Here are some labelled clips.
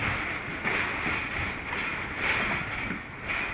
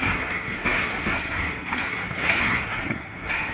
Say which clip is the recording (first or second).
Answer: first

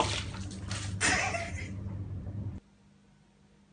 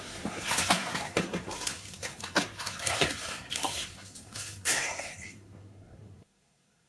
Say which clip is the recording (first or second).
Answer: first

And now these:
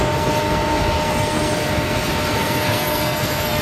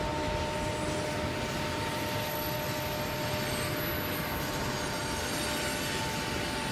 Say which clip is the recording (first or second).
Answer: second